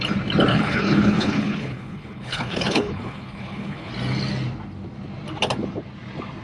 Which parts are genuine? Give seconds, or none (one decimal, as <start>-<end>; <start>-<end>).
0.0-0.5; 3.9-6.4